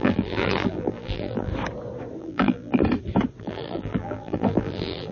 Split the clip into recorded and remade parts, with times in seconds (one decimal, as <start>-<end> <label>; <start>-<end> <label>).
0.0-1.5 remade; 1.5-2.2 recorded; 2.2-2.8 remade; 2.8-3.4 recorded; 3.4-5.1 remade